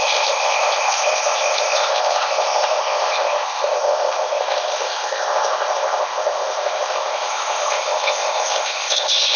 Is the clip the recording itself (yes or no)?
no